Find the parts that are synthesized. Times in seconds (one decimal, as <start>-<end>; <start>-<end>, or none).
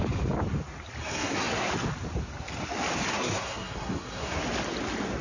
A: 1.0-1.7; 3.1-4.4